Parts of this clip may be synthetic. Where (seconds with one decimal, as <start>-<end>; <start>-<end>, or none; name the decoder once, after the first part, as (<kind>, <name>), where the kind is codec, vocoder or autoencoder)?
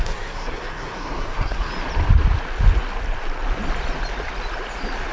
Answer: 0.0-1.7 (codec, SNAC)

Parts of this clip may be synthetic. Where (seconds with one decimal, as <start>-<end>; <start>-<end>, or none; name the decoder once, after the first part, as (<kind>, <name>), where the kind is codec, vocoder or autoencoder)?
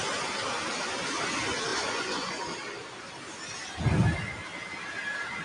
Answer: 1.7-2.4 (vocoder, Vocos)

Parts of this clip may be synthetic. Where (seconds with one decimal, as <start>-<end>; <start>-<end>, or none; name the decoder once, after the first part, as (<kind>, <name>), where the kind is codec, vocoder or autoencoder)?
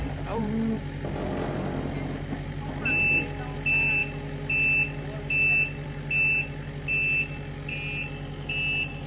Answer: none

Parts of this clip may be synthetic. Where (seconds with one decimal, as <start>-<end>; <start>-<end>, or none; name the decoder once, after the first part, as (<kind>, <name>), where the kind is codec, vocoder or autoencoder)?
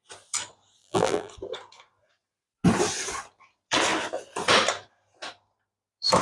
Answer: 0.8-1.3 (vocoder, BigVGAN v2)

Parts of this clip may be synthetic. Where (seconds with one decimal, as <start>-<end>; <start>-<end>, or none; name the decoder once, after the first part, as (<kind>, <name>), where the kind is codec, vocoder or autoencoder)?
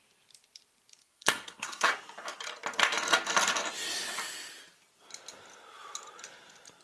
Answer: 1.0-1.9 (codec, SNAC)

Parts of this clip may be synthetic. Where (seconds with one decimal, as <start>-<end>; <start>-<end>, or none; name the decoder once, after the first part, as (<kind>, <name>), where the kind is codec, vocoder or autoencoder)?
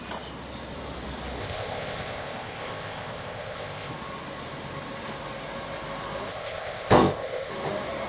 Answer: 1.4-3.9 (codec, ZipCodec); 6.3-7.5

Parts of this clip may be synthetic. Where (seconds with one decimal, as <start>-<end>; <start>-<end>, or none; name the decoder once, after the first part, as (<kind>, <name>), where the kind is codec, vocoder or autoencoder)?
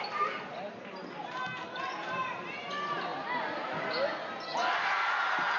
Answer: none